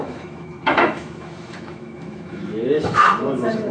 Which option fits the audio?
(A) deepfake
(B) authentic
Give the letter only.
A